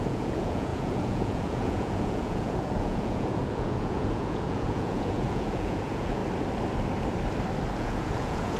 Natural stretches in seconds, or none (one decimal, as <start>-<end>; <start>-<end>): 6.2-7.8

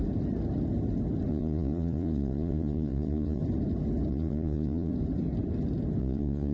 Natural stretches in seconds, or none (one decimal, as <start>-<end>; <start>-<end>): 0.0-1.3; 3.4-4.1; 4.9-6.0

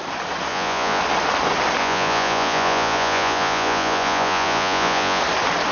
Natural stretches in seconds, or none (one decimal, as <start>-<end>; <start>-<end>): 0.0-0.5; 1.0-1.8; 5.2-5.7

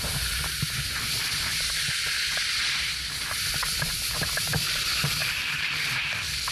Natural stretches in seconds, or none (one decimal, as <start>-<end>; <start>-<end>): 0.0-5.2; 5.7-6.5

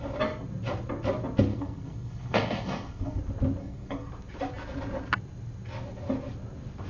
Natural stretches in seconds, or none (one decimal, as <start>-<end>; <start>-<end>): 0.0-1.5; 3.2-3.6; 4.1-6.9

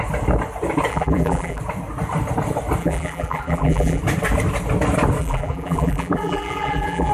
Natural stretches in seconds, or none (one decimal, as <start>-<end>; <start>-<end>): 0.0-0.9; 1.6-2.8; 4.0-5.2